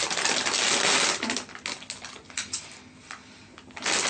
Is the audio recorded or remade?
recorded